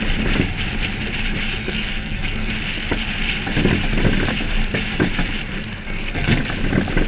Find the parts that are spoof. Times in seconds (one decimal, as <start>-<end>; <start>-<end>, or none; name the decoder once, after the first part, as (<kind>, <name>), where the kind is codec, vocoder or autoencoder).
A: 1.6-2.5 (codec, SNAC); 5.7-6.4